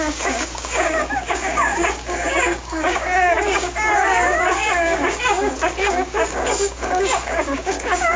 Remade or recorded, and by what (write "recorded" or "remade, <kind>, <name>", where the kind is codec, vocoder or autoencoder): remade, codec, DAC